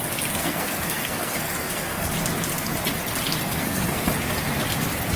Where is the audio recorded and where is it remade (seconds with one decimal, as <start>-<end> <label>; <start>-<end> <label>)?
0.0-0.4 recorded; 0.4-2.1 remade; 2.1-3.4 recorded; 3.4-4.1 remade; 4.1-5.2 recorded